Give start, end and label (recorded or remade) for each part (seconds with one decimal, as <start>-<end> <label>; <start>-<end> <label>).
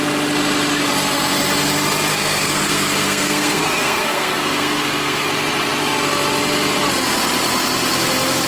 0.0-2.1 recorded; 2.1-5.3 remade; 5.3-8.5 recorded